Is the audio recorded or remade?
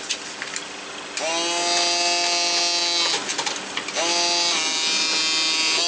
recorded